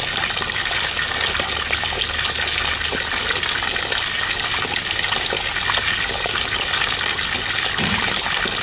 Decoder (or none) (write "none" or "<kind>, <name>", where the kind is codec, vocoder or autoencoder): none